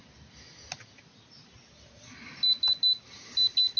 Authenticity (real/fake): real